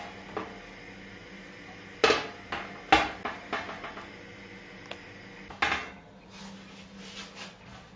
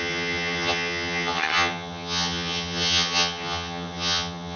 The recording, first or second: first